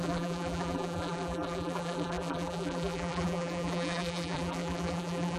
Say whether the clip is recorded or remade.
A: remade